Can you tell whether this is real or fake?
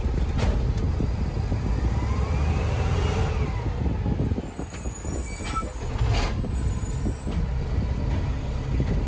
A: real